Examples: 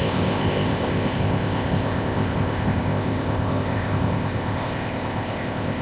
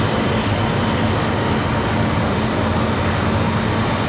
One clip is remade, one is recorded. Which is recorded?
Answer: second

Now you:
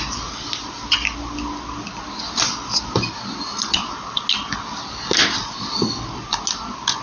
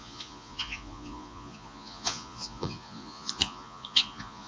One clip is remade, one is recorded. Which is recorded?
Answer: first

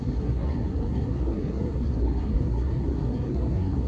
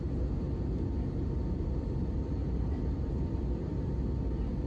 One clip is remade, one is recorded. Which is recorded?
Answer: second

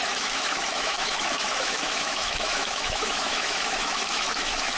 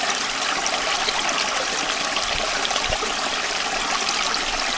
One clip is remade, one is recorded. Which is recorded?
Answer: second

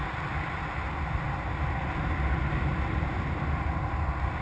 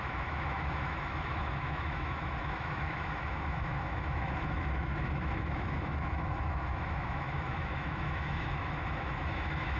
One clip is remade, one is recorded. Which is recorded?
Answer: first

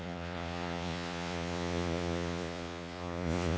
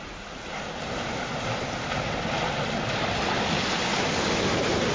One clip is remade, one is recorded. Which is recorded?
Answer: second